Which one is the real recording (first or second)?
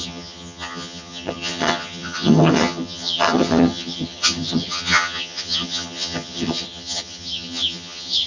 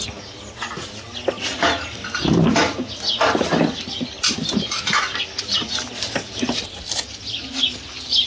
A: second